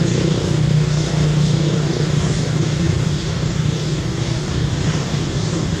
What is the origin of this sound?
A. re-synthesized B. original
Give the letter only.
A